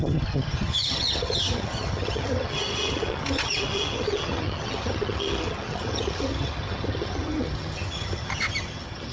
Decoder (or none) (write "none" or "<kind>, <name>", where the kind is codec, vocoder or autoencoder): vocoder, HiFi-GAN